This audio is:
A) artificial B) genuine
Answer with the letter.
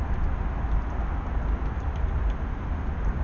B